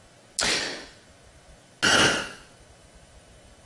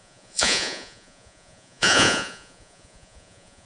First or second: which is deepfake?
second